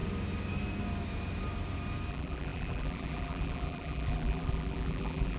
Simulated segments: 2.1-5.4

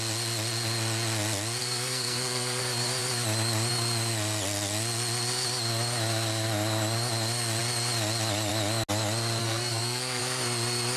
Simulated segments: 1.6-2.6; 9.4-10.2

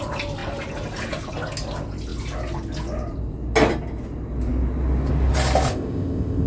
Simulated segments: 5.7-6.5

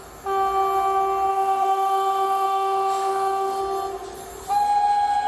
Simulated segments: 1.3-3.6

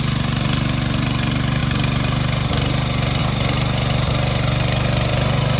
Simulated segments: 5.1-5.6